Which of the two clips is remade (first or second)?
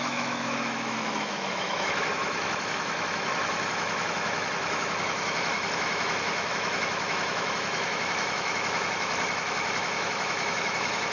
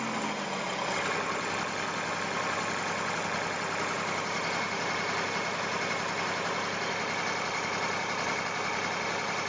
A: first